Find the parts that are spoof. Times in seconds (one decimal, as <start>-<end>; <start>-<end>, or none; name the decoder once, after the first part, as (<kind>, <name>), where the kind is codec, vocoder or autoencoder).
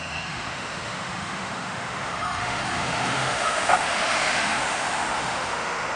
0.0-6.0 (autoencoder, DAC-VAE)